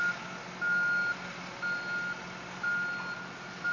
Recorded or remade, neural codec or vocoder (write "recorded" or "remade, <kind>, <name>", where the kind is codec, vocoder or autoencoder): recorded